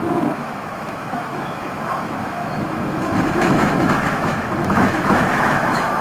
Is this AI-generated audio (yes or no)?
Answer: yes